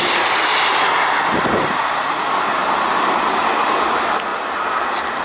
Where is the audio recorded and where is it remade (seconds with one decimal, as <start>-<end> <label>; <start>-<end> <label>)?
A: 0.0-5.2 recorded